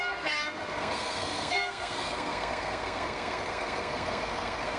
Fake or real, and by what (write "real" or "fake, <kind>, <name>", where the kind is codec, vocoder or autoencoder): fake, codec, SNAC